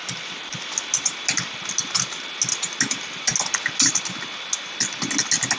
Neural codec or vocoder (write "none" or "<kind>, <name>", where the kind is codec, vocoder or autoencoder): none